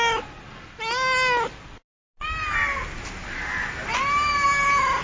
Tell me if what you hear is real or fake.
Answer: real